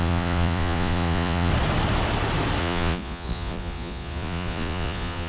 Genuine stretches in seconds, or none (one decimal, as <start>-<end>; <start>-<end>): 1.5-2.6